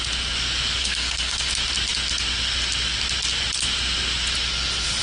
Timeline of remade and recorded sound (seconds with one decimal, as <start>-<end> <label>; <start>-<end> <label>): 0.0-0.8 recorded; 0.8-1.5 remade; 1.5-5.0 recorded